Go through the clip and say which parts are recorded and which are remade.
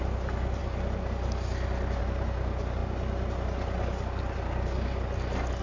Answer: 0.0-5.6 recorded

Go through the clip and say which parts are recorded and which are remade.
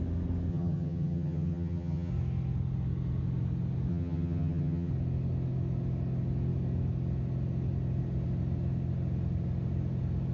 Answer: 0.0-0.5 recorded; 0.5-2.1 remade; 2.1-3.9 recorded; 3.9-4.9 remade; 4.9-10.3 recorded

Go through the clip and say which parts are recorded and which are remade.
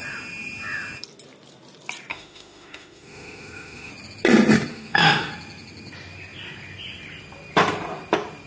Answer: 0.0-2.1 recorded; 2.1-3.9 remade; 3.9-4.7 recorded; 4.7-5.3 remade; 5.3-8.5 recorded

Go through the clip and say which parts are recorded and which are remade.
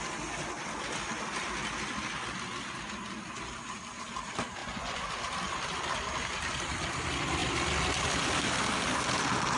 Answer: 0.0-4.6 recorded; 4.6-5.1 remade; 5.1-9.6 recorded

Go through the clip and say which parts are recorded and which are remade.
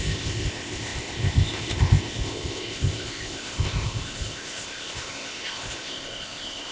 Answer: 0.0-6.7 remade